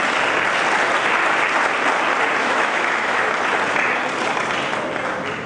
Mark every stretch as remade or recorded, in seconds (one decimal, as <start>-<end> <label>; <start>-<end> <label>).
0.0-2.4 recorded; 2.4-3.3 remade; 3.3-5.5 recorded